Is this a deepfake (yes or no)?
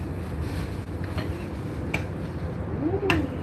no